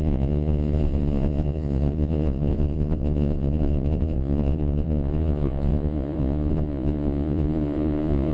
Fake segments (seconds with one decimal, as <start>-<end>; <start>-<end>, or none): 0.0-8.3